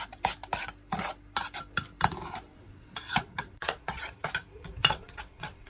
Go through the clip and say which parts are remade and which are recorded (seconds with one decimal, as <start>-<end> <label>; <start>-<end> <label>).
0.0-2.5 recorded; 2.5-4.3 remade; 4.3-4.8 recorded; 4.8-5.7 remade

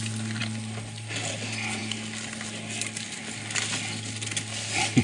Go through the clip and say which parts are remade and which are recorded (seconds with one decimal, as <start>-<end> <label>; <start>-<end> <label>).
0.0-5.0 recorded

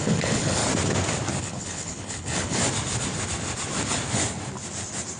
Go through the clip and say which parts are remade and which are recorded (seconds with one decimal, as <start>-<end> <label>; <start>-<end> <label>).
0.0-0.6 remade; 0.6-1.4 recorded; 1.4-2.6 remade; 2.6-5.2 recorded

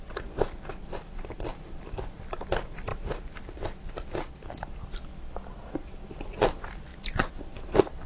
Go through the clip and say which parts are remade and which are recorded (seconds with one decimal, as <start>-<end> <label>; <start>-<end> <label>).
0.0-2.9 remade; 2.9-5.5 recorded; 5.5-6.9 remade; 6.9-8.1 recorded